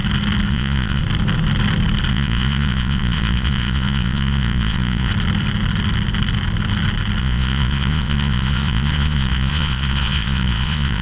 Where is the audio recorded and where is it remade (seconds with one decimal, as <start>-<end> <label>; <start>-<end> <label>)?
0.0-0.5 recorded; 0.5-1.0 remade; 1.0-2.1 recorded; 2.1-5.1 remade; 5.1-7.2 recorded; 7.2-11.0 remade